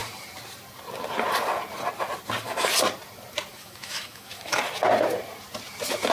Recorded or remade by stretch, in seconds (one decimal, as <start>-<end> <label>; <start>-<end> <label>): 0.0-3.5 recorded; 3.5-4.6 remade; 4.6-6.1 recorded